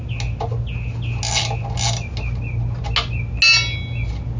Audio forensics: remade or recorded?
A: recorded